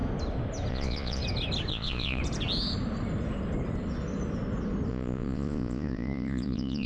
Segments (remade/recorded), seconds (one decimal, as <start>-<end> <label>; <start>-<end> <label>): 0.0-0.7 recorded; 0.7-1.2 remade; 1.2-1.7 recorded; 1.7-2.2 remade; 2.2-4.9 recorded; 4.9-6.9 remade